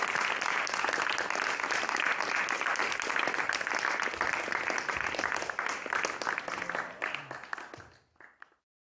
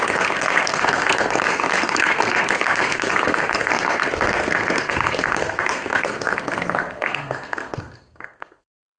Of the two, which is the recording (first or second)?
first